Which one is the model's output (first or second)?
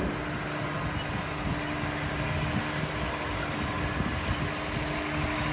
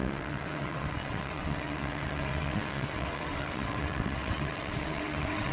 second